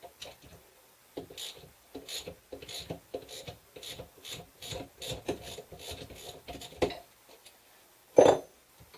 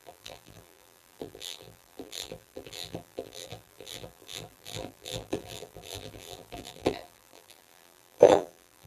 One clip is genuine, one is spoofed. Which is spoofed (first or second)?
second